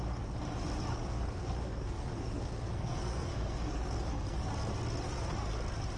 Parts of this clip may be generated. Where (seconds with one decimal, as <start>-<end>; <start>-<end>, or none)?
0.9-4.5